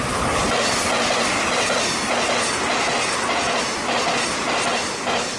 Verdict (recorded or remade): recorded